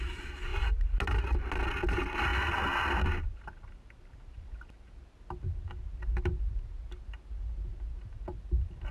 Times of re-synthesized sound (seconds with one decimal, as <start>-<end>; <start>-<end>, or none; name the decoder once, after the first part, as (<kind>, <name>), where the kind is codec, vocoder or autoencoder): none